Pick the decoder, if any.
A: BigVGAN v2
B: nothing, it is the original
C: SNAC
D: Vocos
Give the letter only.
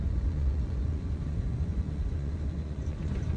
D